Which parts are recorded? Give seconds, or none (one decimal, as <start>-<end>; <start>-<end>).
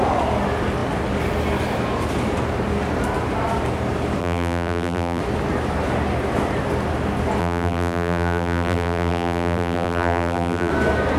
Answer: 0.0-4.2; 5.2-7.4; 10.7-11.2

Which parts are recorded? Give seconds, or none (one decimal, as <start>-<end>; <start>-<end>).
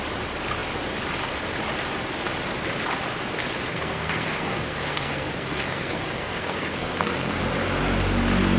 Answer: 0.0-3.7; 7.4-8.6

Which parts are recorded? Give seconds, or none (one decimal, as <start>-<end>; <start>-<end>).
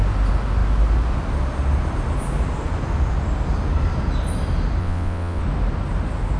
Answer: 0.0-4.8; 5.4-6.4